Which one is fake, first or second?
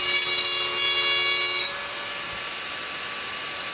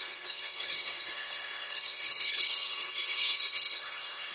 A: second